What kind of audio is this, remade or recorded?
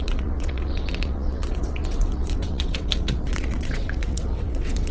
remade